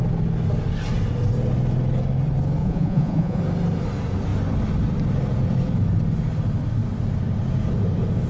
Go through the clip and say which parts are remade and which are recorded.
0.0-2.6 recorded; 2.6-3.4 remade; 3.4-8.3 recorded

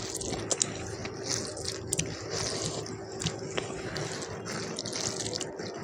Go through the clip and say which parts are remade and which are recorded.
0.0-5.8 recorded

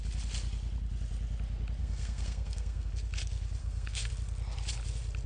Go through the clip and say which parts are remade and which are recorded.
0.0-1.8 recorded; 1.8-2.9 remade; 2.9-3.6 recorded; 3.6-4.1 remade; 4.1-5.3 recorded

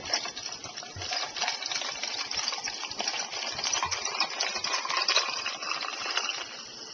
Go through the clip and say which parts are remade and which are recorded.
0.0-0.6 recorded; 0.6-3.7 remade; 3.7-6.9 recorded

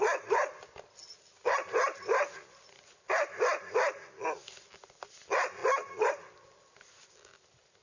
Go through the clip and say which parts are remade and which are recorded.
0.0-7.8 recorded

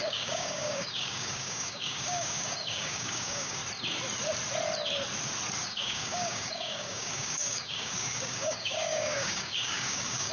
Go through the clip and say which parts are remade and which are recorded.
0.0-3.6 remade; 3.6-5.6 recorded; 5.6-10.3 remade